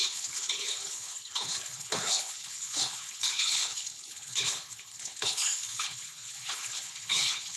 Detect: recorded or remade remade